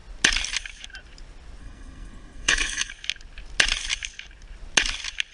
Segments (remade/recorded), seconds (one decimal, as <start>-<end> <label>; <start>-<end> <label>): 0.0-1.6 recorded; 1.6-2.9 remade; 2.9-5.3 recorded